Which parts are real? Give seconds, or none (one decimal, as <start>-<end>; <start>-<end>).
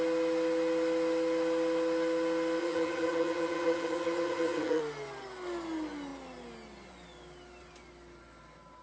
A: 0.0-2.6; 4.8-8.8